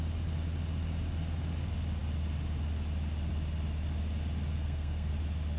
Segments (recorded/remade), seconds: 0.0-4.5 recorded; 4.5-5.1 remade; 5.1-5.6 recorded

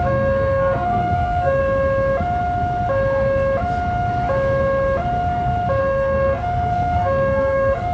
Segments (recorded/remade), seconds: 0.0-1.6 remade; 1.6-5.8 recorded; 5.8-7.9 remade

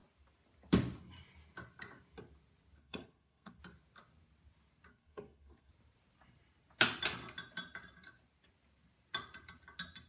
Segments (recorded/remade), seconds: 0.0-2.8 recorded; 2.8-3.6 remade; 3.6-4.9 recorded; 4.9-5.7 remade; 5.7-10.1 recorded

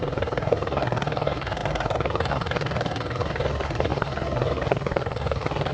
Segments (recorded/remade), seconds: 0.0-5.7 remade

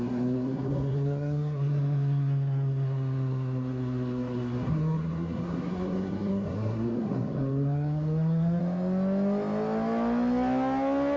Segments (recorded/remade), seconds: 0.0-8.6 remade; 8.6-11.2 recorded

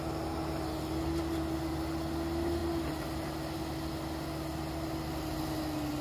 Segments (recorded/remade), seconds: 0.0-6.0 recorded

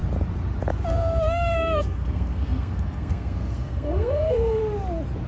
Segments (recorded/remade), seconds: 0.0-0.9 recorded; 0.9-4.6 remade; 4.6-5.3 recorded

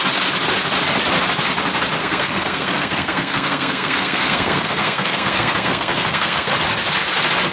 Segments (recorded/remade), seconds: 0.0-2.0 recorded; 2.0-6.5 remade; 6.5-7.5 recorded